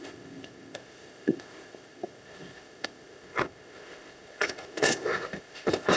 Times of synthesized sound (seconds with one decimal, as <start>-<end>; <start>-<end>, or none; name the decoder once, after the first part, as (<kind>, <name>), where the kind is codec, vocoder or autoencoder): 0.0-6.0 (codec, ZipCodec)